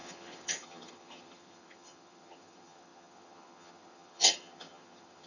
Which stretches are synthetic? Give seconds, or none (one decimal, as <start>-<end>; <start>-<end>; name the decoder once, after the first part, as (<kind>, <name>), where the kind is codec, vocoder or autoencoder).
0.0-5.3 (vocoder, HiFi-GAN)